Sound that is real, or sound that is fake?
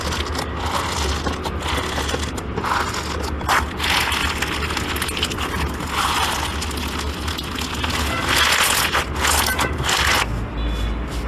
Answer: real